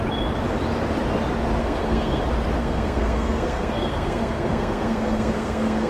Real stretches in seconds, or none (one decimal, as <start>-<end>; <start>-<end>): 0.0-1.6; 2.2-2.6